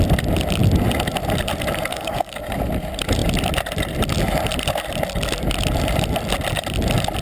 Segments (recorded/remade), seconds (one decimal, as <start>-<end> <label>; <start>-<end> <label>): 0.0-1.9 recorded; 1.9-2.4 remade; 2.4-7.2 recorded

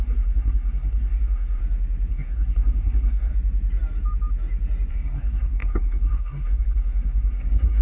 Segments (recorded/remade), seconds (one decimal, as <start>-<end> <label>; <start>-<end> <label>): 0.0-1.6 remade; 1.6-2.1 recorded; 2.1-3.3 remade; 3.3-4.9 recorded; 4.9-7.8 remade